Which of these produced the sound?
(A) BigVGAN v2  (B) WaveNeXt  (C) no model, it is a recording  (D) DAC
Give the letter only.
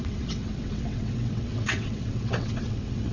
B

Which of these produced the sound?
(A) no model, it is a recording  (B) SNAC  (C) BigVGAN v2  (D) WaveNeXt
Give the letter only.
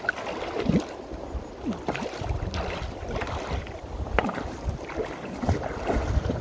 A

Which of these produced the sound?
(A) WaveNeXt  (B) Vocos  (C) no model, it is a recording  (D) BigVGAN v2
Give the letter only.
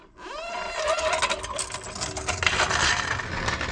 C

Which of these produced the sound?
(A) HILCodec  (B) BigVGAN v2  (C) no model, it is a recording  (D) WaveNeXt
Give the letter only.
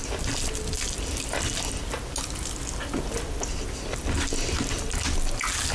C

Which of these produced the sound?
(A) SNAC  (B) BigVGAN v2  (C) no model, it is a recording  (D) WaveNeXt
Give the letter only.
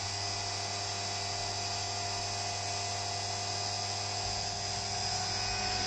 C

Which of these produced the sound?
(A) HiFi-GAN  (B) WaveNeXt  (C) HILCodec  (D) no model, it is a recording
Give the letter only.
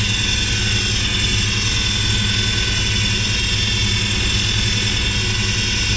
D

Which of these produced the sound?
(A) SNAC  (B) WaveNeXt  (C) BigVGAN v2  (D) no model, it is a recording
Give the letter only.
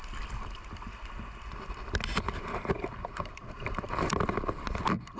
D